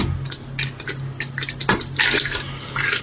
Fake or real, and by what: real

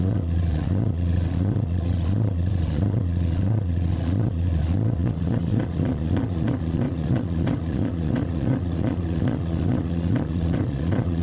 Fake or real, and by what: fake, vocoder, Vocos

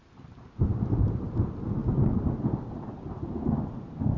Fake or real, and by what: real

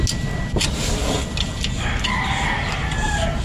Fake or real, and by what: real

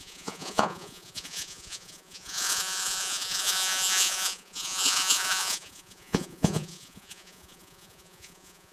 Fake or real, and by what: fake, vocoder, Vocos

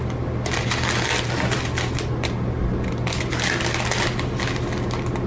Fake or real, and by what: real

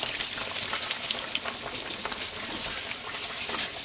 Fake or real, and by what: real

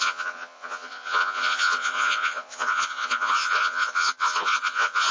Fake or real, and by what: fake, vocoder, Vocos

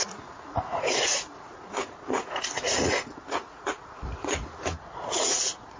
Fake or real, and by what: fake, vocoder, Vocos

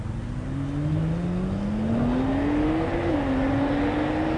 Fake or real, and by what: real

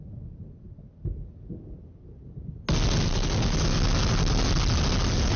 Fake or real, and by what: real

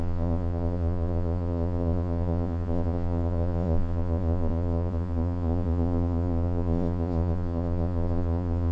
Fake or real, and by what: fake, vocoder, Vocos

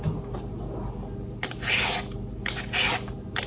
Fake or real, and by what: real